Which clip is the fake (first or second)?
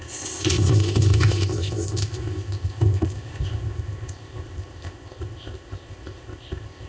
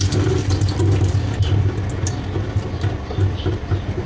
first